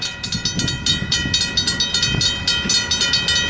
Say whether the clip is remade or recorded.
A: recorded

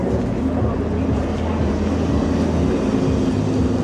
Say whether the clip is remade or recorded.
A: recorded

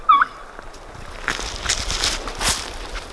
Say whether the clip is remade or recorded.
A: recorded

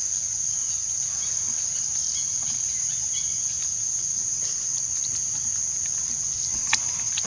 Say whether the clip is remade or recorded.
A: recorded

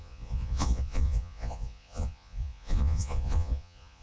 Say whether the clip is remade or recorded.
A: remade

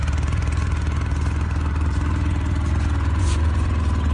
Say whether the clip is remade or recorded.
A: remade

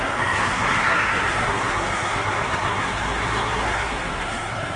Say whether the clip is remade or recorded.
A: remade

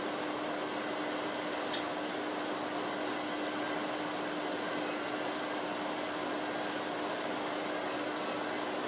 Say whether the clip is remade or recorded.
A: recorded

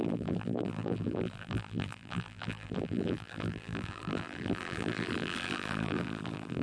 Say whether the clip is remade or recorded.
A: remade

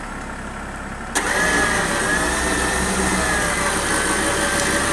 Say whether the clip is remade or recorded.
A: recorded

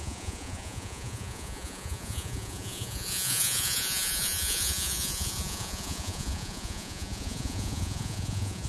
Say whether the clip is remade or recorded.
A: remade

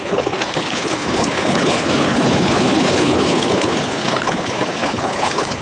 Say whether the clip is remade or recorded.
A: remade